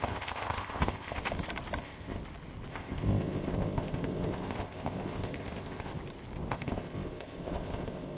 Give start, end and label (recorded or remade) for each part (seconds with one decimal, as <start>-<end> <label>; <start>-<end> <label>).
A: 0.0-1.2 remade; 1.2-1.8 recorded; 1.8-2.2 remade; 2.2-2.7 recorded; 2.7-5.9 remade; 5.9-6.5 recorded; 6.5-8.2 remade